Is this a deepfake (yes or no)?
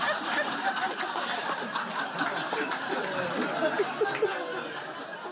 no